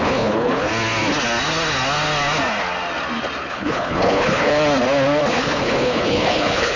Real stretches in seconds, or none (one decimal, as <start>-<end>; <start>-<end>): 0.7-3.5; 4.5-5.3

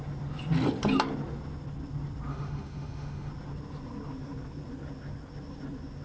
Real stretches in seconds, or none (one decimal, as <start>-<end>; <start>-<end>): 0.0-2.3; 3.3-6.0

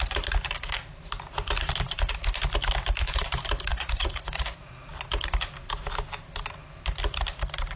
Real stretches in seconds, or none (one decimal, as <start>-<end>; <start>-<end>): 0.0-3.7; 4.9-7.8

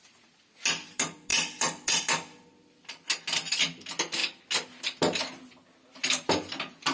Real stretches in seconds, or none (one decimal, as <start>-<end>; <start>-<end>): 0.0-6.9

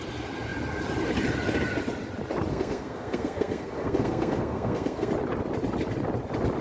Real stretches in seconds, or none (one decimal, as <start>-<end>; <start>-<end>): 0.0-2.5; 5.1-6.6

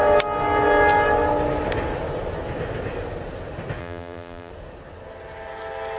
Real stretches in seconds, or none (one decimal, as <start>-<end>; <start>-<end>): 0.0-3.8; 4.5-6.0